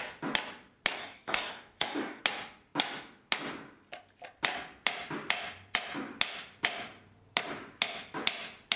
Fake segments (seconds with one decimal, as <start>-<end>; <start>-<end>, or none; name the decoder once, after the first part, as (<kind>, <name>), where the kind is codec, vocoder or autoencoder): 1.0-2.2 (codec, DAC)